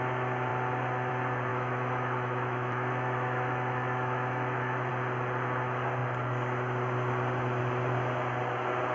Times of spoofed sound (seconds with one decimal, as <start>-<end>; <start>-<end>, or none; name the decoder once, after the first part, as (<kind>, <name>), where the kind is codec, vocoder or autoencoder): 1.5-4.9 (autoencoder, DAC-VAE)